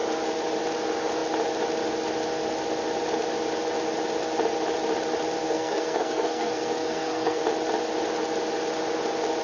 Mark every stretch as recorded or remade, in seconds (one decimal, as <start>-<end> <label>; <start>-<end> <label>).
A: 0.0-5.4 recorded; 5.4-7.4 remade; 7.4-9.4 recorded